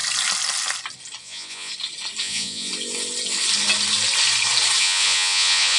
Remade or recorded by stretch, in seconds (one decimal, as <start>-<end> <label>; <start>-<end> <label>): 0.0-1.2 recorded; 1.2-1.7 remade; 1.7-2.2 recorded; 2.2-2.7 remade; 2.7-4.8 recorded; 4.8-5.8 remade